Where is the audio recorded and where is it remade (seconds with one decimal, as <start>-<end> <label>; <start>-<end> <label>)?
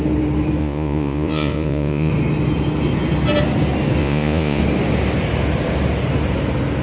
0.0-0.6 recorded; 0.6-2.1 remade; 2.1-4.0 recorded; 4.0-4.6 remade; 4.6-6.8 recorded